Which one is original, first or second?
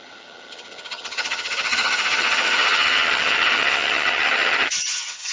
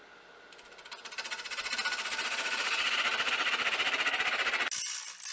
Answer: second